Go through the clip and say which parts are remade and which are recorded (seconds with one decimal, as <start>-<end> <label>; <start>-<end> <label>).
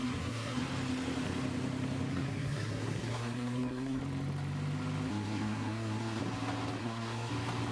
0.0-0.6 remade; 0.6-2.1 recorded; 2.1-4.0 remade; 4.0-5.1 recorded; 5.1-6.2 remade; 6.2-6.8 recorded; 6.8-7.3 remade; 7.3-7.7 recorded